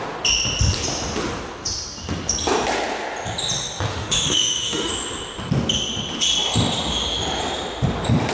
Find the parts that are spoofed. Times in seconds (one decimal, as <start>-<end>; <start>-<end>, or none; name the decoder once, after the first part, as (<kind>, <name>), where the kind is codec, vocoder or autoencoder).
3.9-4.9 (autoencoder, DAC-VAE)